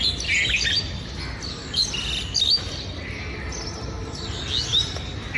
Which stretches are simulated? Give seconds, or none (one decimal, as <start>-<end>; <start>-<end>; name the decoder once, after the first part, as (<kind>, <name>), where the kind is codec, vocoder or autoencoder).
none